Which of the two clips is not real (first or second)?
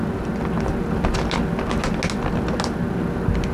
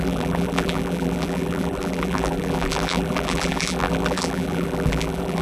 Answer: second